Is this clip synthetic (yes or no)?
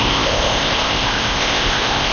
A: yes